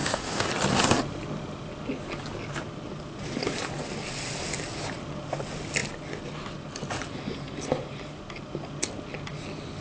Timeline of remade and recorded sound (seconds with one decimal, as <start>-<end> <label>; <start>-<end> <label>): 0.0-0.5 remade; 0.5-9.8 recorded